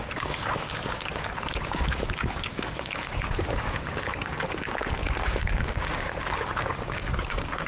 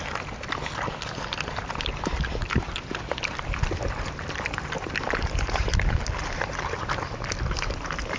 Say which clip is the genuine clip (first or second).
second